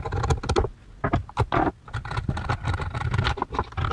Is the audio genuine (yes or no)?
yes